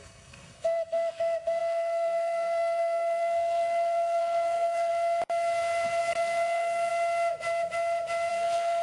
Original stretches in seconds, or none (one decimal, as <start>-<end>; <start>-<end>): 4.9-6.0; 6.9-8.3